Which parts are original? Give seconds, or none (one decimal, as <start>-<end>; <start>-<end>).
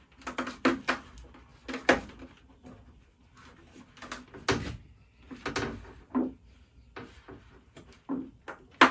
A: 0.0-8.9